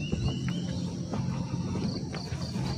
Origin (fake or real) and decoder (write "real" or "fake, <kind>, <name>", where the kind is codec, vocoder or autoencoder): real